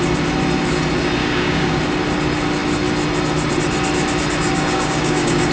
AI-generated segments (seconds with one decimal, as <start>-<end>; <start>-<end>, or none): 1.2-1.8; 4.4-5.5